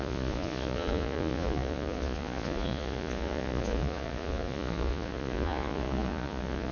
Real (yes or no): no